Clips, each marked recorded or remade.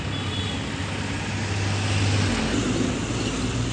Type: recorded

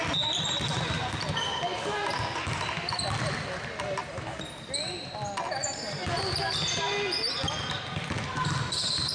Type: recorded